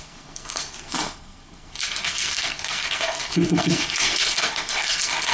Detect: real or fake fake